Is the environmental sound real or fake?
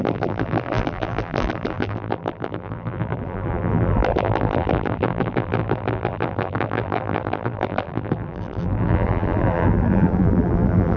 fake